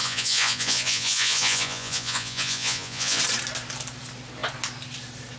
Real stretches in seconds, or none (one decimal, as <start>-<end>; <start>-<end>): 3.2-5.4